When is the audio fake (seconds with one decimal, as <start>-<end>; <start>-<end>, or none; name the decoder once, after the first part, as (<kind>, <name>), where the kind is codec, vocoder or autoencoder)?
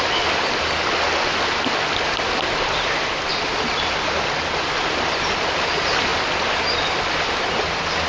none